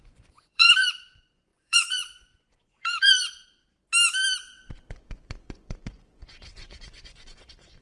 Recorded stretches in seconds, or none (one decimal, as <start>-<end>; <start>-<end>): 3.6-4.9